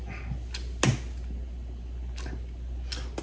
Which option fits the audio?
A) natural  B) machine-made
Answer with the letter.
A